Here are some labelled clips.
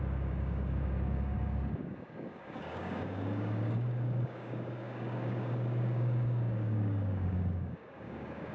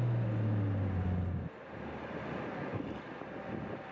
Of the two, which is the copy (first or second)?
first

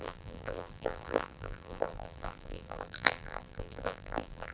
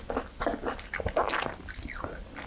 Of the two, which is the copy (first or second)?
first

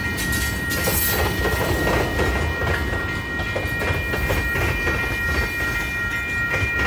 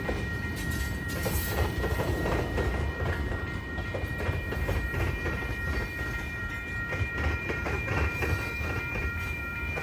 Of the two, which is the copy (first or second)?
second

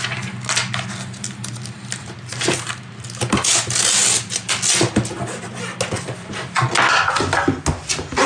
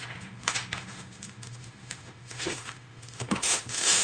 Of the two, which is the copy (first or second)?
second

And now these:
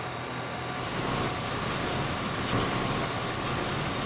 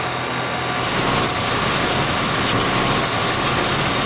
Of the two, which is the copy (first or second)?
first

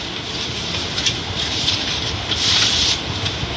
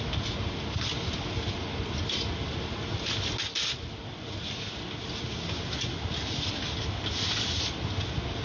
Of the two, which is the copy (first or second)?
first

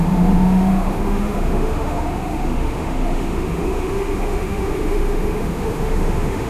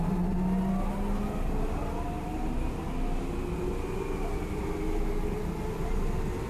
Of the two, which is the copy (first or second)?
first